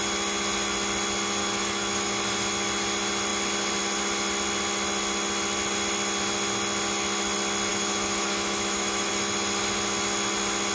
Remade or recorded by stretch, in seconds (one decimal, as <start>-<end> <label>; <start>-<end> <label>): 0.0-1.4 recorded; 1.4-2.1 remade; 2.1-7.7 recorded; 7.7-9.1 remade; 9.1-10.7 recorded